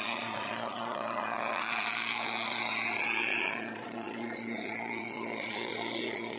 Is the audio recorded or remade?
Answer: remade